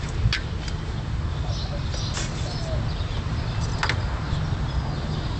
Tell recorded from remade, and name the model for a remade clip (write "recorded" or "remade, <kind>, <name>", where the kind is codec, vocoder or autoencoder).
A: recorded